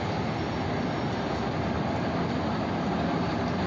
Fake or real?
real